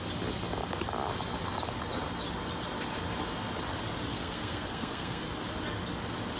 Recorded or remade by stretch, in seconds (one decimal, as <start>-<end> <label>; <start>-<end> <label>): 0.0-4.1 recorded; 4.1-5.2 remade; 5.2-6.4 recorded